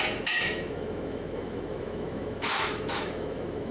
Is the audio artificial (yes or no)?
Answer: yes